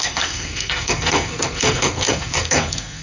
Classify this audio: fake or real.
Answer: fake